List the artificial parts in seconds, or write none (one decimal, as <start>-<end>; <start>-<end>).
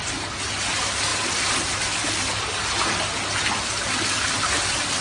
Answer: none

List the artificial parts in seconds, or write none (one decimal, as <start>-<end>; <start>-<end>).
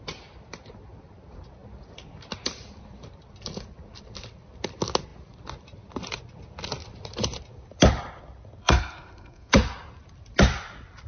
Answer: 8.6-9.5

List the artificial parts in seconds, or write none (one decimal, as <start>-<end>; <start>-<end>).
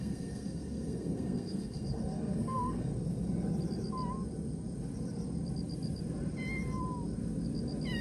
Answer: 0.0-2.9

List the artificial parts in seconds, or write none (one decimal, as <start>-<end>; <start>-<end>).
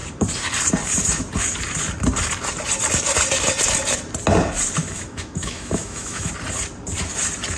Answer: 4.8-6.3